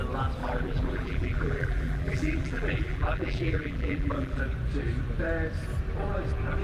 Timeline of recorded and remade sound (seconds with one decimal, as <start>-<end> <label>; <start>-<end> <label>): 0.0-0.4 recorded; 0.4-4.4 remade; 4.4-6.6 recorded